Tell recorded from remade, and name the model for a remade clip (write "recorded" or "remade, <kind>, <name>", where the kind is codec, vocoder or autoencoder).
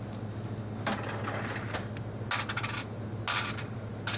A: recorded